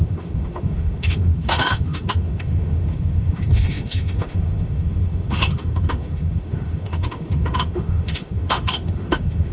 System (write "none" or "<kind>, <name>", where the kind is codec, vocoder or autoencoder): autoencoder, DAC-VAE